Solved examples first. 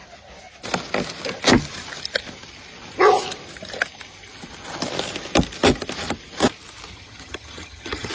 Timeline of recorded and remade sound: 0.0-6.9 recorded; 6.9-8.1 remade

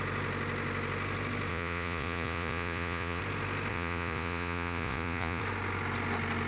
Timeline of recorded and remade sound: 0.0-1.5 recorded; 1.5-3.2 remade; 3.2-3.7 recorded; 3.7-5.4 remade; 5.4-6.5 recorded

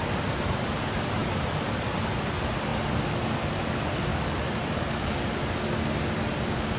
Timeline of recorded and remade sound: 0.0-4.1 recorded; 4.1-5.4 remade; 5.4-6.8 recorded

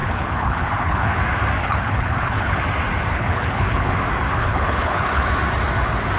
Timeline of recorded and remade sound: 0.0-1.2 remade; 1.2-1.6 recorded; 1.6-2.6 remade; 2.6-3.1 recorded; 3.1-3.9 remade; 3.9-4.4 recorded; 4.4-5.3 remade; 5.3-6.2 recorded

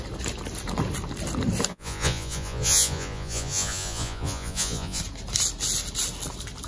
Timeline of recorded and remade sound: 0.0-1.7 recorded; 1.7-5.0 remade; 5.0-6.7 recorded